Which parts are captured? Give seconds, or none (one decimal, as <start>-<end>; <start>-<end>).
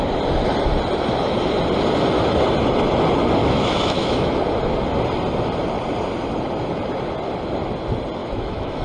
0.0-3.4; 4.3-8.2